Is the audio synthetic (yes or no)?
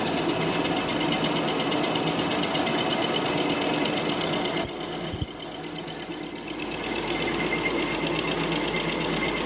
no